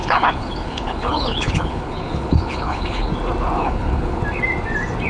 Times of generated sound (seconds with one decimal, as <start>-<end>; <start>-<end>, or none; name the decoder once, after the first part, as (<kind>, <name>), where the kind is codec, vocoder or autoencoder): 0.0-3.1 (codec, HILCodec); 3.6-4.2